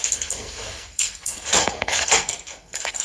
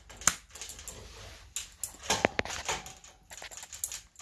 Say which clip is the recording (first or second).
second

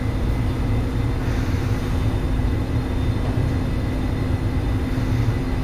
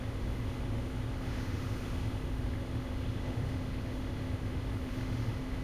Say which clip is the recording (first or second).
first